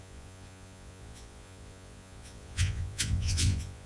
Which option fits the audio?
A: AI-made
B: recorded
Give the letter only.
A